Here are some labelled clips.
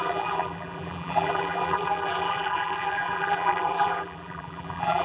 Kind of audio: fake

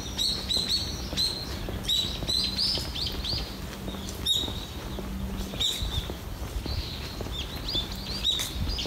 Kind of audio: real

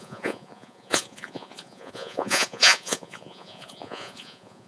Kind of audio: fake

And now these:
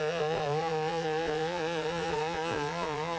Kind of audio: fake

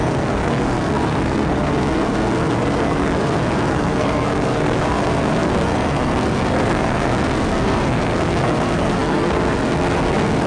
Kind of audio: fake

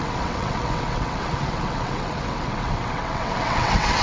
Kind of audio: fake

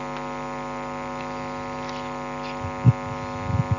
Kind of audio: real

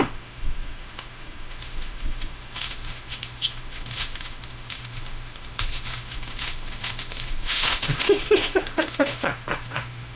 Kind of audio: fake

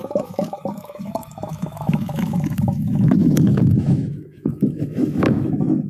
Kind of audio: fake